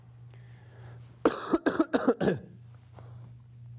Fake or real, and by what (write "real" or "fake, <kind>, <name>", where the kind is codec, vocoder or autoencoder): real